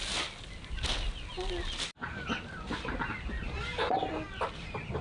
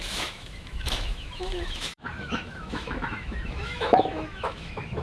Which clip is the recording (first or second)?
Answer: first